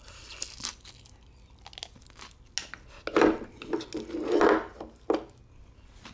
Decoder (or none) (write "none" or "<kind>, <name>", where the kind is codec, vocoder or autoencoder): none